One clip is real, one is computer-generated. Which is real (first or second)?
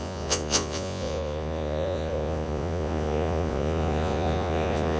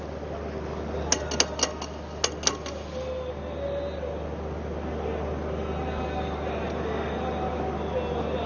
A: second